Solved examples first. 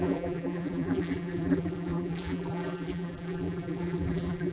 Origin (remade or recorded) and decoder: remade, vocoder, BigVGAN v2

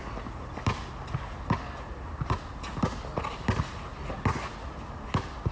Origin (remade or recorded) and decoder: recorded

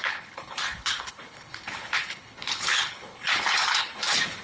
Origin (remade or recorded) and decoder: remade, codec, HILCodec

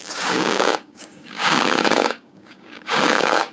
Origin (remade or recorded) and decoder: remade, codec, DAC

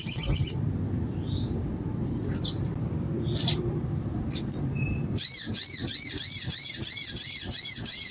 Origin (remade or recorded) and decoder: remade, vocoder, BigVGAN v2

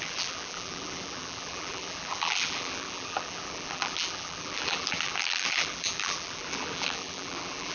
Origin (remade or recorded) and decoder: remade, vocoder, BigVGAN v2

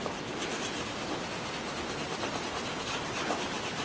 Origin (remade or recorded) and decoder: recorded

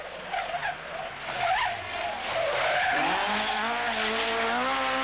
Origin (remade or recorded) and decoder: recorded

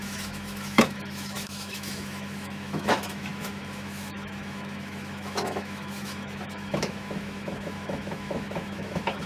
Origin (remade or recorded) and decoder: remade, autoencoder, DAC-VAE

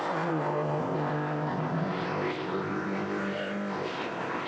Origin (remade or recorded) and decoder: remade, codec, ZipCodec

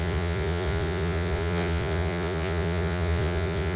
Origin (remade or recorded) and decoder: remade, vocoder, Vocos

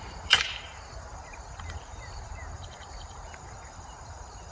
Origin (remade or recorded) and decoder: remade, vocoder, BigVGAN v2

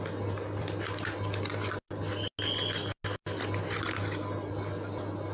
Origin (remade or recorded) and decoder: recorded